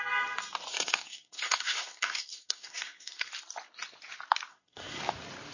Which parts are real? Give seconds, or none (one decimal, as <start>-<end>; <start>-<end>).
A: 0.0-0.7; 3.3-4.5; 5.0-5.5